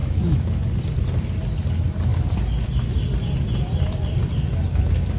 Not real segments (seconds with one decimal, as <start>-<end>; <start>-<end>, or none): none